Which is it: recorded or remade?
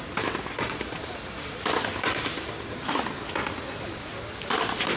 recorded